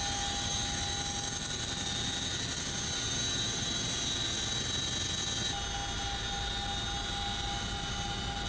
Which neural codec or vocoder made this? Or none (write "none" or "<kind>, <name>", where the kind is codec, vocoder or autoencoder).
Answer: none